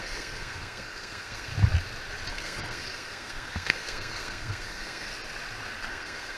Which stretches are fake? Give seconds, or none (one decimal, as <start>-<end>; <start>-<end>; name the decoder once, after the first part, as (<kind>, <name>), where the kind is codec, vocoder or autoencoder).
0.0-1.5 (codec, SNAC); 2.3-5.1; 5.9-6.4